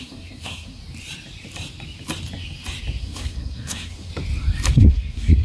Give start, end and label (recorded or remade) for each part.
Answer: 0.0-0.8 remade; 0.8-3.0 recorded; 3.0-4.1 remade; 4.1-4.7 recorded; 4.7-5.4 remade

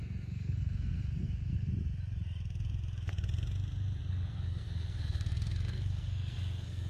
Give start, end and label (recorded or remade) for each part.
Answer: 0.0-1.7 remade; 1.7-4.1 recorded; 4.1-6.9 remade

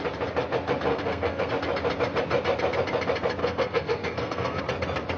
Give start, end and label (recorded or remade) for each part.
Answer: 0.0-0.9 recorded; 0.9-1.5 remade; 1.5-3.4 recorded; 3.4-4.6 remade; 4.6-5.2 recorded